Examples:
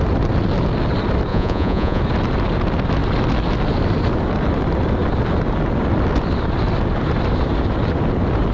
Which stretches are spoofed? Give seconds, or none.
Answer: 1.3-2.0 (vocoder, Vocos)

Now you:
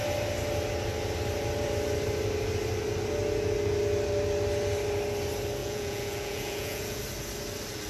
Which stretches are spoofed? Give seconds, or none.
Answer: 5.6-7.0 (vocoder, Vocos)

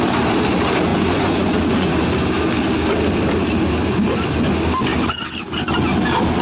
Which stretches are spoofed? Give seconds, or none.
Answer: 0.9-1.9 (vocoder, Vocos)

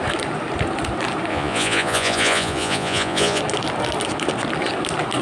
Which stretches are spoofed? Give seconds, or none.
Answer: 1.3-3.4 (vocoder, Vocos)

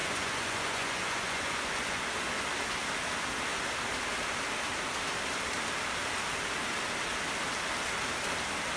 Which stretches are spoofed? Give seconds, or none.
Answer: 0.0-2.0 (vocoder, Vocos)

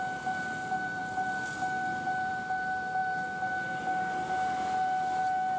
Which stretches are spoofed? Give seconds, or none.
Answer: none